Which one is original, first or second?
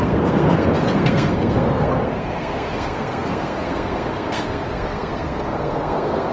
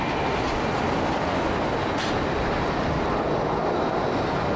second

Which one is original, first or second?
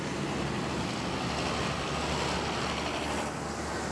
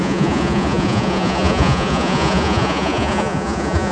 first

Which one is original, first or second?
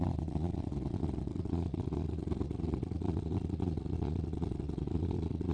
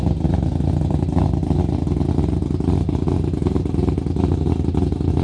second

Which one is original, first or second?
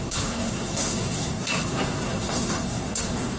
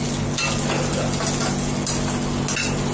second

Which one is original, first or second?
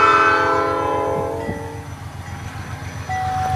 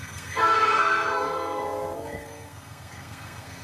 first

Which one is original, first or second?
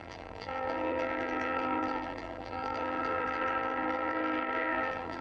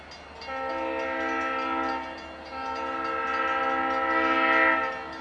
second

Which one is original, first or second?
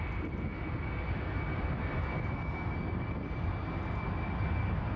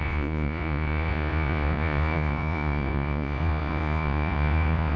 first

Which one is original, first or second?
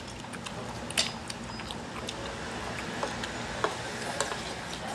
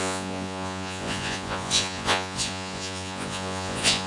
first